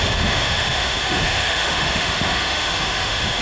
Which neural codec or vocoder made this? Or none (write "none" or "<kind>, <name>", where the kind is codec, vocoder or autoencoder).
autoencoder, DAC-VAE